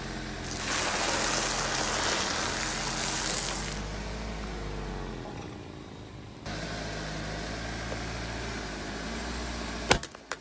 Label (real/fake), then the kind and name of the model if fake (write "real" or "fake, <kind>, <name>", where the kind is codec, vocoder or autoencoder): real